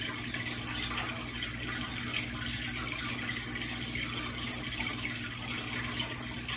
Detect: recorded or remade recorded